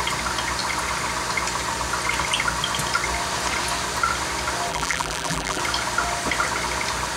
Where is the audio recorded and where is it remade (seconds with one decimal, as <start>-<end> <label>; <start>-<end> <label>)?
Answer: 0.0-4.7 recorded; 4.7-5.6 remade; 5.6-7.2 recorded